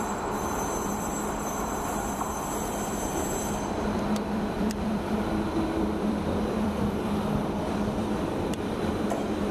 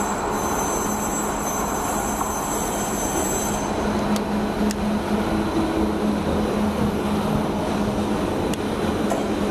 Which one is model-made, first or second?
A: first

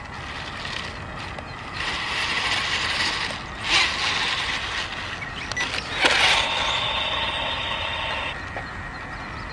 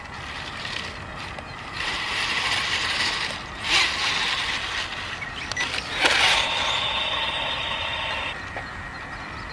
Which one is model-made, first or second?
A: second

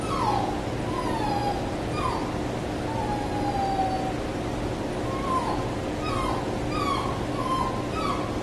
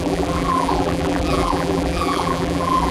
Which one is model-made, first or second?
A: second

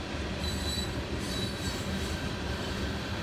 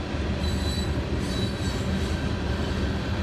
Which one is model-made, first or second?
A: first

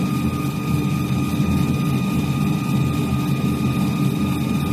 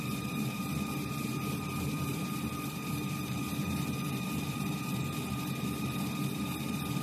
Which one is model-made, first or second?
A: second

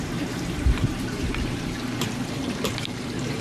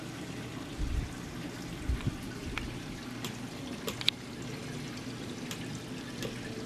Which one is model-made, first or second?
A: first